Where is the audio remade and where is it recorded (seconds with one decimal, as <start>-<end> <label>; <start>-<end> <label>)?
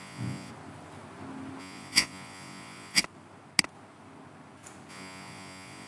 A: 0.0-0.5 remade; 0.5-1.6 recorded; 1.6-3.0 remade; 3.0-4.9 recorded; 4.9-5.9 remade